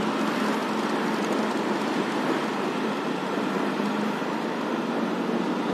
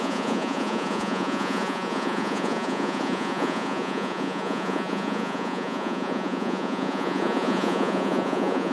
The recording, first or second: first